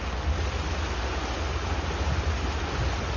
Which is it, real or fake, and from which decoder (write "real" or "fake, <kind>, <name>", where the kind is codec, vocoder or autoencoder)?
real